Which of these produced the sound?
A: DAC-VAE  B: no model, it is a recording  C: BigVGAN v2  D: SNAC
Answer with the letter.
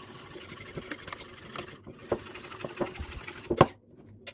B